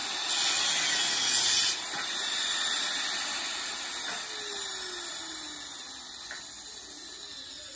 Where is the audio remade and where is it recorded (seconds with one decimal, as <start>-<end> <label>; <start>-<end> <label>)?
0.0-7.8 recorded